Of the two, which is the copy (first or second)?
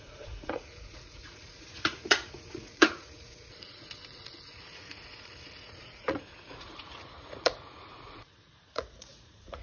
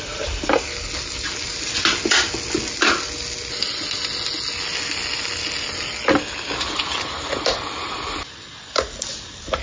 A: first